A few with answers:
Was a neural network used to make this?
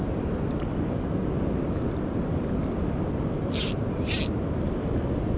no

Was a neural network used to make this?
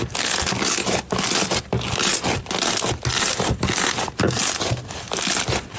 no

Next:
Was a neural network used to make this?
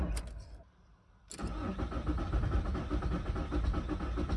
no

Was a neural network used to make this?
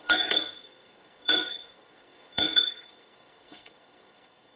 yes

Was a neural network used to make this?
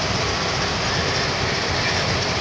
no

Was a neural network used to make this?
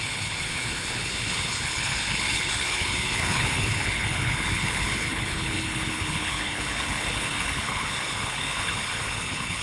yes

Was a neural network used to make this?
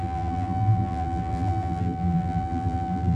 yes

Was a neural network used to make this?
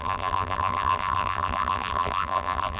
yes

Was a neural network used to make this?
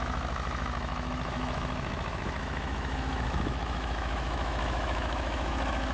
yes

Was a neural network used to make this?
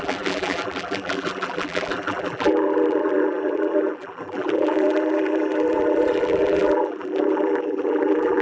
yes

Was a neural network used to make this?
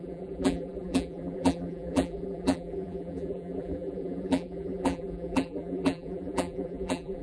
yes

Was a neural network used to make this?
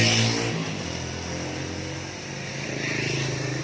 no